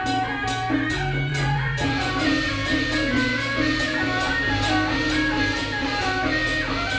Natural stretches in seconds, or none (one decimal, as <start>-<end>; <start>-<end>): 0.0-1.3; 2.1-7.0